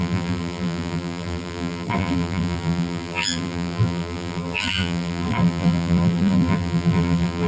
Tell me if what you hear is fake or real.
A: fake